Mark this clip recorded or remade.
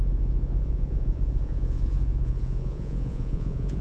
remade